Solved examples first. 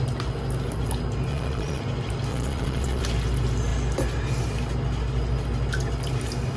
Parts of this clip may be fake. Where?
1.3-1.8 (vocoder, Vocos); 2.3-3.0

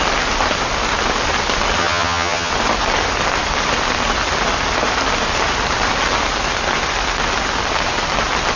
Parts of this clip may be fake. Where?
1.8-2.5 (vocoder, HiFi-GAN)

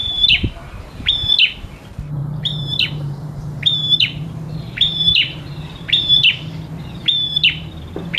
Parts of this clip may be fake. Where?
0.0-1.1 (vocoder, BigVGAN v2); 2.2-6.1

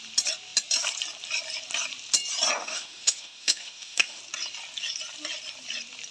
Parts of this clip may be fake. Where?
2.6-4.2 (autoencoder, DAC-VAE)

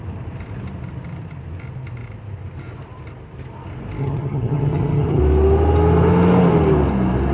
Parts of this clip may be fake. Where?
4.0-5.2 (vocoder, HiFi-GAN)

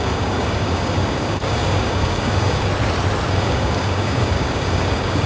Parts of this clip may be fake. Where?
0.0-2.7 (codec, DAC); 3.3-5.3